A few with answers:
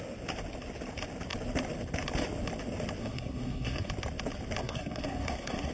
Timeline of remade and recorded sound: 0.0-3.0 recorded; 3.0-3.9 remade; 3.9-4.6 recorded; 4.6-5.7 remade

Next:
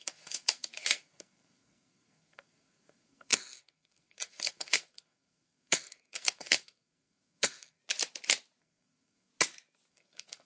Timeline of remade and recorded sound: 0.0-7.8 remade; 7.8-8.6 recorded; 8.6-9.3 remade; 9.3-9.9 recorded; 9.9-10.5 remade

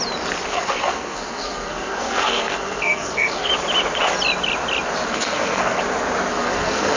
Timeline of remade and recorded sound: 0.0-0.5 recorded; 0.5-3.5 remade; 3.5-5.1 recorded; 5.1-5.8 remade; 5.8-6.3 recorded; 6.3-7.0 remade

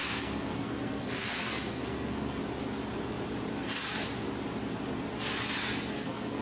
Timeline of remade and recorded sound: 0.0-2.4 remade; 2.4-3.5 recorded; 3.5-4.0 remade; 4.0-5.9 recorded; 5.9-6.4 remade

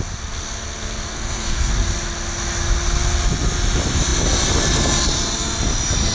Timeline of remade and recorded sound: 0.0-1.1 recorded; 1.1-1.7 remade; 1.7-6.1 recorded